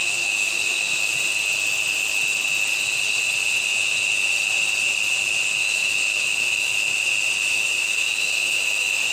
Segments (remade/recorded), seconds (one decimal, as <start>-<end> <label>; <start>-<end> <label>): 0.0-1.1 remade; 1.1-5.6 recorded; 5.6-6.9 remade; 6.9-7.5 recorded; 7.5-9.1 remade